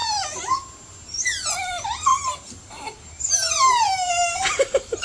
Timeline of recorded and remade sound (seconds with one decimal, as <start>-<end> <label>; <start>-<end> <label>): 0.0-2.1 recorded; 2.1-4.1 remade; 4.1-5.0 recorded